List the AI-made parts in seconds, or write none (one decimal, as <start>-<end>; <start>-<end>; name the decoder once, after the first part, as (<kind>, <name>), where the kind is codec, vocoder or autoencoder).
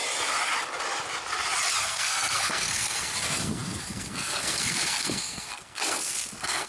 1.8-6.7 (codec, SNAC)